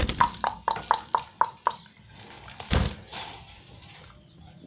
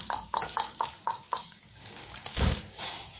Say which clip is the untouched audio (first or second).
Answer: first